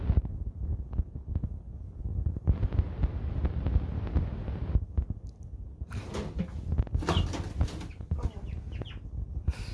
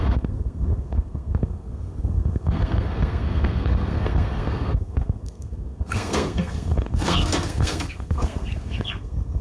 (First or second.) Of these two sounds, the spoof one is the second